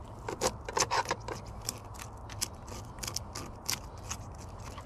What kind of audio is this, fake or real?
real